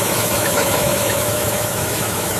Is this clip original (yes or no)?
no